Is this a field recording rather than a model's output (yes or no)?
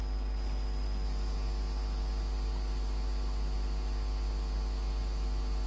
yes